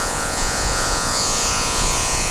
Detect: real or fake fake